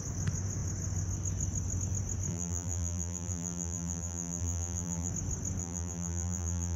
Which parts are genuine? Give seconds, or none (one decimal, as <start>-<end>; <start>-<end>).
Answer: 0.0-2.3; 5.1-5.6